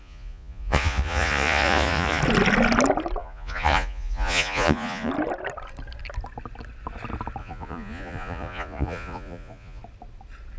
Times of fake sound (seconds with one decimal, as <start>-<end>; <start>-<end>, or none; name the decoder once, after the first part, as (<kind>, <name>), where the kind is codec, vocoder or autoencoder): 0.0-2.2 (vocoder, Vocos); 3.2-5.1; 7.4-9.8